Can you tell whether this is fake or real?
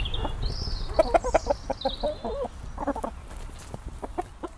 real